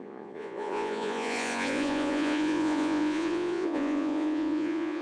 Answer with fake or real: fake